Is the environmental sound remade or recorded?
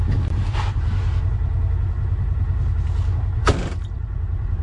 recorded